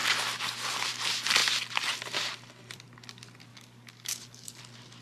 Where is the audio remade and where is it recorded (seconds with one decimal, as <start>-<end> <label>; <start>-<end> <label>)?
0.0-3.5 recorded; 3.5-4.6 remade; 4.6-5.0 recorded